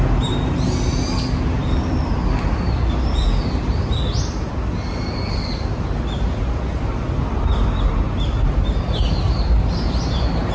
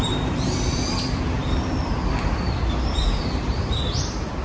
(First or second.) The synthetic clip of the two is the second